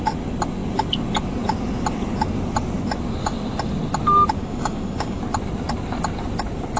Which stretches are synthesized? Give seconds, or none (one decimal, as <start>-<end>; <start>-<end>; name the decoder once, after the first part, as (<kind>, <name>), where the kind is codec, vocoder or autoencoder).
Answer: 4.4-5.2 (codec, DAC)